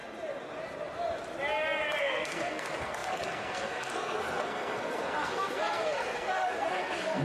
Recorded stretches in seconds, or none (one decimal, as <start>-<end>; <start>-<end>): 0.0-2.0